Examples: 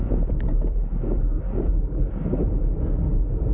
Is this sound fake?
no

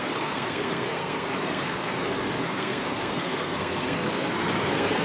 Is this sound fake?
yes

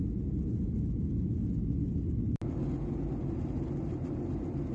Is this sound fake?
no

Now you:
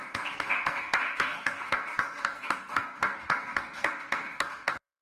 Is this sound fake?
yes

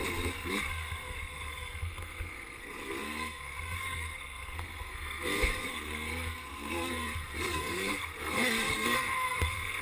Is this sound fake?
yes